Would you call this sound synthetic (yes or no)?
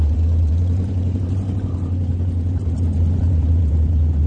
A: yes